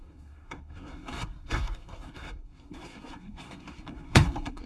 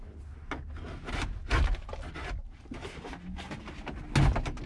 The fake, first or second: first